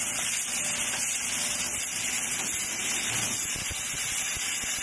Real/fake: real